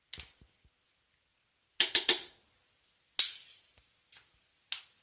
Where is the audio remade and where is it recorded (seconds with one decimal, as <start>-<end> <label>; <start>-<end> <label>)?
0.0-5.0 recorded

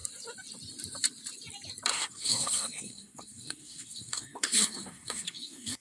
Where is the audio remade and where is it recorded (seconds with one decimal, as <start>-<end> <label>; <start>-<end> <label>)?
0.0-1.9 recorded; 1.9-5.8 remade